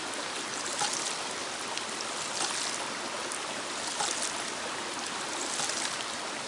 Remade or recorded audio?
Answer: recorded